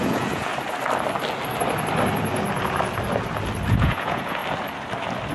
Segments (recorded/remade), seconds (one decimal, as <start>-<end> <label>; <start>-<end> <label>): 0.0-0.5 remade; 0.5-3.7 recorded; 3.7-4.4 remade; 4.4-5.3 recorded